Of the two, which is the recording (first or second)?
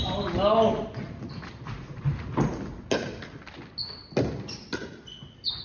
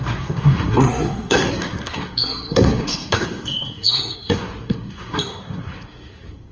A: first